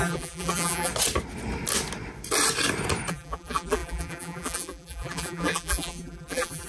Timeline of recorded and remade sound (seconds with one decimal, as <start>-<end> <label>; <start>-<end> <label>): 0.0-0.9 remade; 0.9-3.1 recorded; 3.1-6.7 remade